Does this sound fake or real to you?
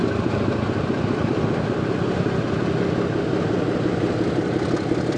real